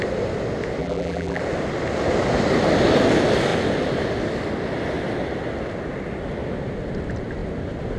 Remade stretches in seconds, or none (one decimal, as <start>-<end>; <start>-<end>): 0.8-1.4